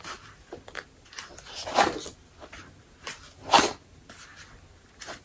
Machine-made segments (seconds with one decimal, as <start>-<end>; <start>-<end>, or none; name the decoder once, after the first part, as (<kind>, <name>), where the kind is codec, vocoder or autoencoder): 2.6-3.7 (vocoder, BigVGAN v2)